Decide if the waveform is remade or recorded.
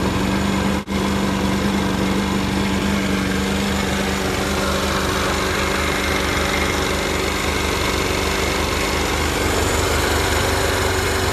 recorded